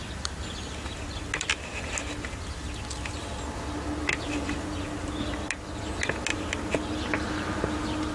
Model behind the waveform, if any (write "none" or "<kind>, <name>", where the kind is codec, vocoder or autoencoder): none